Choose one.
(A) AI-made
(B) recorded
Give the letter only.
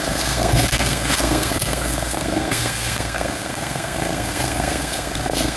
A